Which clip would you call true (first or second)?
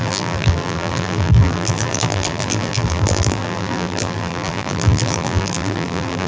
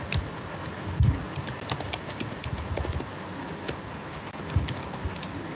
second